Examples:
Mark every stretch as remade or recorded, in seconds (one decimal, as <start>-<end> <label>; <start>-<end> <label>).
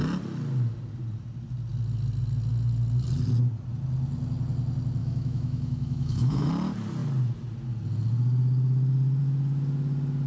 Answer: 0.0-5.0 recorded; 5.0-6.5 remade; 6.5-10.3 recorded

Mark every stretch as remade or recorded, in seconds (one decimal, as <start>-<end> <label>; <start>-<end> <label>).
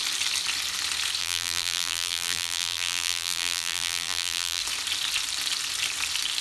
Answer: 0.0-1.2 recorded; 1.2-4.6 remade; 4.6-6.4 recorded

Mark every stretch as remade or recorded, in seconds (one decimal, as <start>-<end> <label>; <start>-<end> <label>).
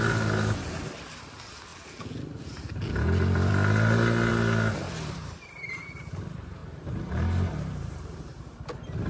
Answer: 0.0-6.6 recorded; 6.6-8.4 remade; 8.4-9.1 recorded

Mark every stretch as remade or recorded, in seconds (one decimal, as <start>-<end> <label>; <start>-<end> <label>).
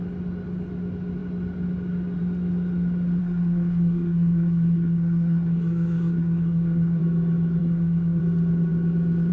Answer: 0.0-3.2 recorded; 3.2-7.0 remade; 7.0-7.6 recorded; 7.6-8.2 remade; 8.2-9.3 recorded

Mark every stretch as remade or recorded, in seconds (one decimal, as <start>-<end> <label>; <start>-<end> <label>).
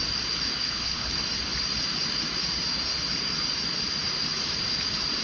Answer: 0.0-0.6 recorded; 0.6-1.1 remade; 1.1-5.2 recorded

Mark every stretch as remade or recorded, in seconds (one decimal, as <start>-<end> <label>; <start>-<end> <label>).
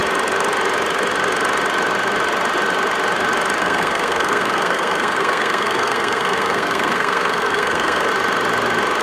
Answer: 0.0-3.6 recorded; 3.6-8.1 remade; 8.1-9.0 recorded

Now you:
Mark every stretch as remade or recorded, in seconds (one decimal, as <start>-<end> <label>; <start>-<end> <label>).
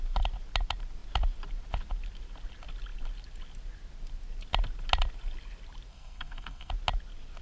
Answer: 0.0-5.9 recorded; 5.9-6.7 remade; 6.7-7.4 recorded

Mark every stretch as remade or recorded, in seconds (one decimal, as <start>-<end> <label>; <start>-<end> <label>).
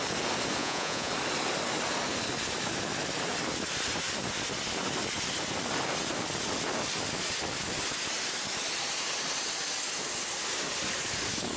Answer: 0.0-0.6 recorded; 0.6-1.1 remade; 1.1-11.6 recorded